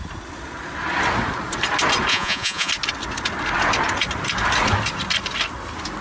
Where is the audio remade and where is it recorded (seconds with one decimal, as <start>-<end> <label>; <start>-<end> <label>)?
0.0-2.1 recorded; 2.1-2.7 remade; 2.7-6.0 recorded